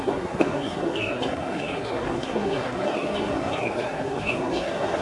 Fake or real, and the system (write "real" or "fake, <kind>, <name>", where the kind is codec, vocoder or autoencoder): fake, codec, SNAC